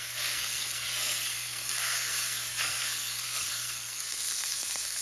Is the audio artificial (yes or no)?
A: yes